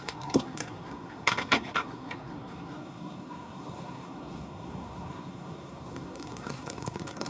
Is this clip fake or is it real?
fake